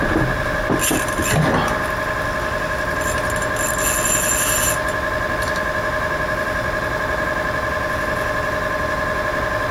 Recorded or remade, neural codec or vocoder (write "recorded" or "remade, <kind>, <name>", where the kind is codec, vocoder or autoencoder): recorded